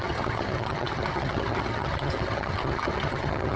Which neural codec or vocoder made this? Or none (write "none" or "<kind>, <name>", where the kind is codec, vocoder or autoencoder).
vocoder, HiFi-GAN